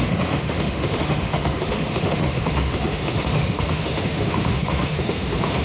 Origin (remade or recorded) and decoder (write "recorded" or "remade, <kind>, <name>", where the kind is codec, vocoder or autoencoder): remade, autoencoder, DAC-VAE